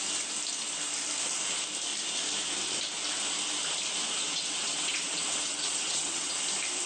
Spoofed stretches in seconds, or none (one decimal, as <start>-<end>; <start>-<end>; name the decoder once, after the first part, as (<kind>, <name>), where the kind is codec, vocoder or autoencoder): 4.2-6.4 (vocoder, WaveNeXt)